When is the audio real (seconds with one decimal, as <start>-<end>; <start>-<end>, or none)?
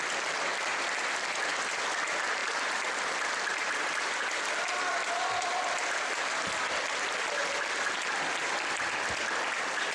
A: 0.0-9.9